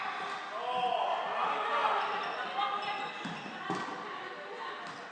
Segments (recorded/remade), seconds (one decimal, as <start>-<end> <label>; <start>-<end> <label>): 0.0-5.1 recorded